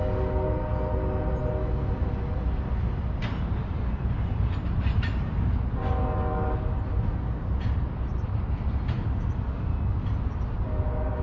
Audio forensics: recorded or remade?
recorded